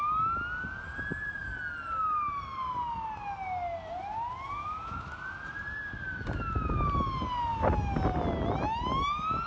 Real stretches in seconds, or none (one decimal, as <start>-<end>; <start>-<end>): 0.0-4.6; 5.1-9.5